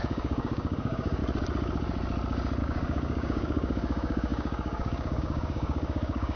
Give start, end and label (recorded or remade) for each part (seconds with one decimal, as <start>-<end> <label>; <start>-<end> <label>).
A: 0.0-1.2 remade; 1.2-2.6 recorded; 2.6-6.4 remade